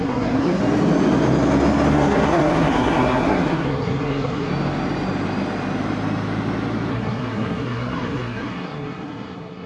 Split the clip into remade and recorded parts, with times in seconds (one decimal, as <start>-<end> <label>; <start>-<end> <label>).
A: 0.0-0.6 remade; 0.6-1.9 recorded; 1.9-4.5 remade; 4.5-6.9 recorded; 6.9-9.7 remade